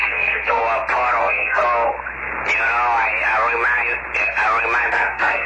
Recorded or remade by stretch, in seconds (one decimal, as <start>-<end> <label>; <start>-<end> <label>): 0.0-0.6 remade; 0.6-1.2 recorded; 1.2-1.6 remade; 1.6-4.9 recorded; 4.9-5.5 remade